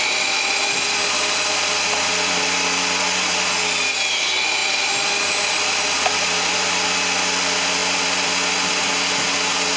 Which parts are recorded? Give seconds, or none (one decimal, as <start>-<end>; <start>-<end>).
0.0-7.8; 8.3-9.8